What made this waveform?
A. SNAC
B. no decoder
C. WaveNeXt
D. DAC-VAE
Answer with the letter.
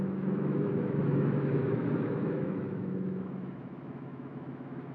D